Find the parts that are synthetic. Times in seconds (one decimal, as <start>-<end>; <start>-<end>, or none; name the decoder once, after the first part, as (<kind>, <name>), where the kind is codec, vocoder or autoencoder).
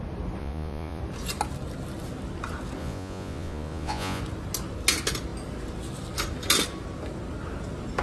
0.4-1.0 (vocoder, Vocos); 2.8-4.2